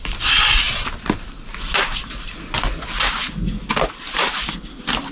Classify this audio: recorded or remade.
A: recorded